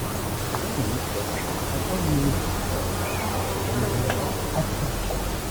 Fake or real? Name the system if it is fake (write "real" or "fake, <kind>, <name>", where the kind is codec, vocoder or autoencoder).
real